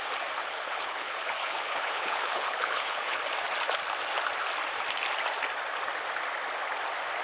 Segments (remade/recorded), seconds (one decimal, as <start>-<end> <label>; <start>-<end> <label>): 0.0-0.4 recorded; 0.4-3.2 remade; 3.2-7.2 recorded